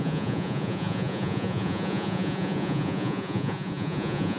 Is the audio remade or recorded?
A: remade